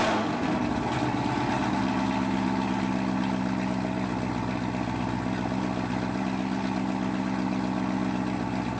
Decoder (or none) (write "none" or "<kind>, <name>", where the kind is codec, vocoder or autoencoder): none